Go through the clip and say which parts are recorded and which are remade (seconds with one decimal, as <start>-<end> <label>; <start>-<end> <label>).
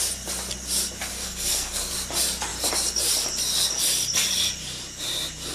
0.0-1.1 recorded; 1.1-1.9 remade; 1.9-5.5 recorded